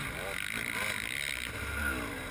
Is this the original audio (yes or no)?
yes